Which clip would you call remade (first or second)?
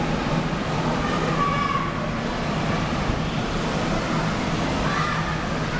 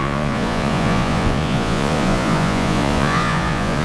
second